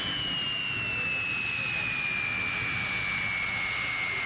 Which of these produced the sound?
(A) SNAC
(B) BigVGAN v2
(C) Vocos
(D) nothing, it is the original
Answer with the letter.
D